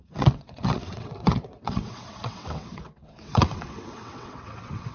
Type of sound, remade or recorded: remade